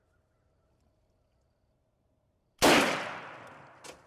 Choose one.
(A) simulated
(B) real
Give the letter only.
B